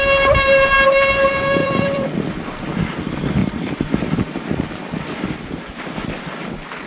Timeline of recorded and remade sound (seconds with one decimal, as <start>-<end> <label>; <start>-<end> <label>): 0.0-1.6 recorded; 1.6-2.8 remade; 2.8-3.4 recorded; 3.4-5.6 remade; 5.6-6.9 recorded